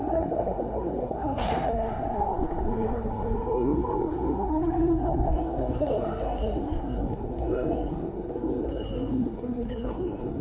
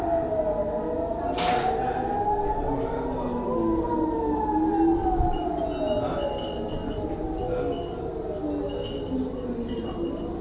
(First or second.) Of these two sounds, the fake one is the first